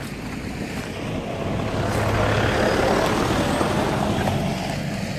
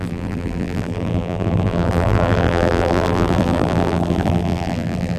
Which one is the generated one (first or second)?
second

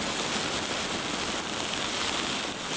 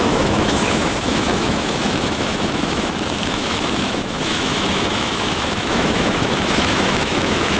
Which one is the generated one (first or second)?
second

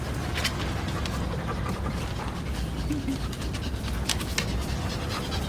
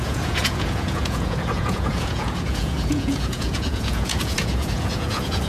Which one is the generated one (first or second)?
second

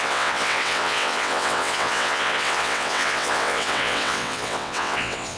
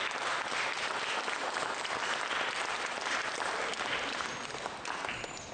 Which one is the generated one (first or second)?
first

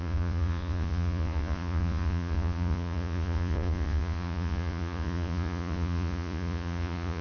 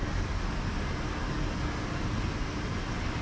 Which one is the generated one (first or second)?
first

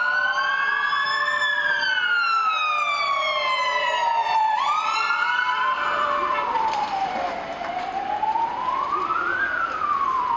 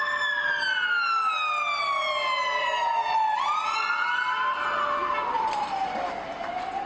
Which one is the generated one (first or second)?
first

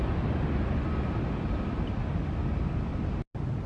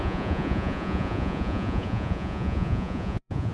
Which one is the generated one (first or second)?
second